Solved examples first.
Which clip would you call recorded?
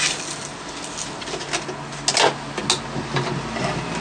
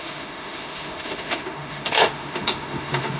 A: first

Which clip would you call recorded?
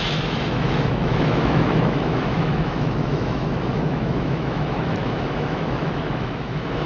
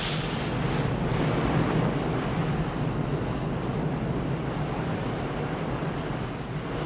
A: second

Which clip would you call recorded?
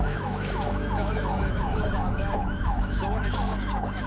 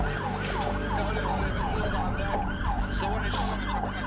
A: second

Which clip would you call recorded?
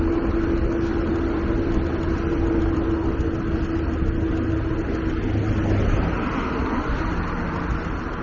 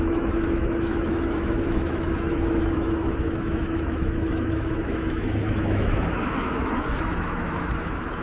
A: first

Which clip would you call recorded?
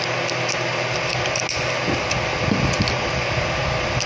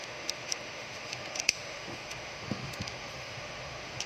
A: first